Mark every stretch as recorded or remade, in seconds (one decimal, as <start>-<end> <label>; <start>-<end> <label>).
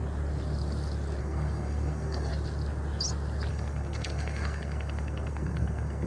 0.0-1.2 recorded; 1.2-2.3 remade; 2.3-3.5 recorded; 3.5-6.1 remade